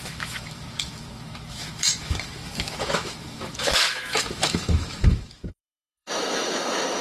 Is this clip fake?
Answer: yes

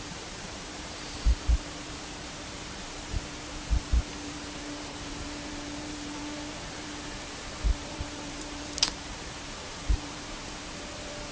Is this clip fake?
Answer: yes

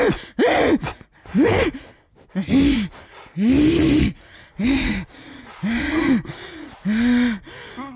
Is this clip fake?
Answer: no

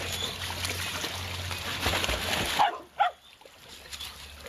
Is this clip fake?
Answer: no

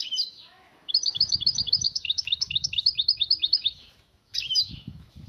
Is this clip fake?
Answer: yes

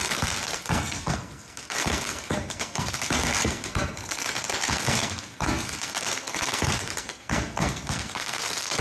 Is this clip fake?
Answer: yes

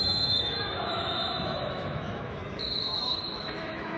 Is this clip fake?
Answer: yes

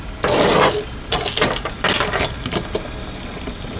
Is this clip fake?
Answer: no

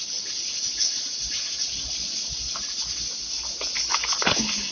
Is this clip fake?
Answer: no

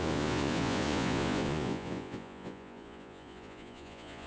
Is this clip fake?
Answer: yes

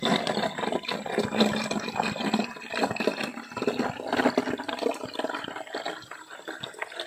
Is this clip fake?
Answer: no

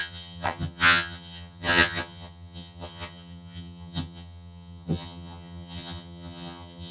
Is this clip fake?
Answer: yes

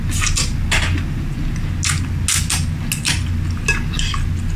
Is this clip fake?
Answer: no